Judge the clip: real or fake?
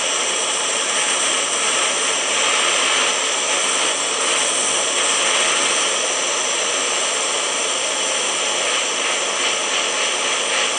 real